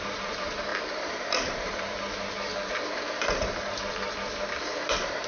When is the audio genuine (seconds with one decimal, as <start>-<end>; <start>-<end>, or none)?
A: none